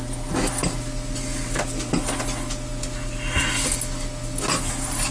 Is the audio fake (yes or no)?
no